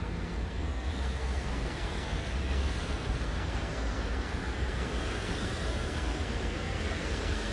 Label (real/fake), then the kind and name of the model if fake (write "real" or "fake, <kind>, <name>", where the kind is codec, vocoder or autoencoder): fake, codec, SNAC